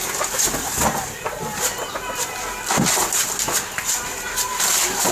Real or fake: real